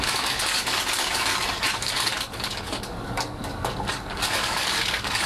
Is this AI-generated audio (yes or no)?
yes